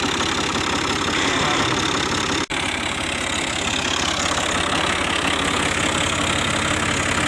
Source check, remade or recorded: recorded